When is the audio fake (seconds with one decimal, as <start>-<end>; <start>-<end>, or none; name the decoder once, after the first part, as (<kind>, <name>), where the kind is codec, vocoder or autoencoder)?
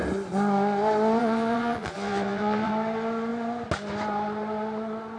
1.2-2.7 (vocoder, Vocos)